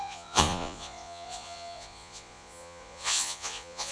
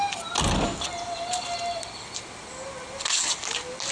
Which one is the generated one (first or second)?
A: first